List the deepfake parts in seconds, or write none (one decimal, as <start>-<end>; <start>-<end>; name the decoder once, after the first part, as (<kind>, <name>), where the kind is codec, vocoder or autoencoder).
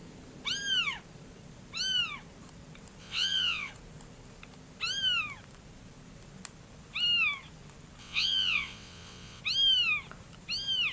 3.0-3.7 (vocoder, WaveNeXt); 8.0-9.4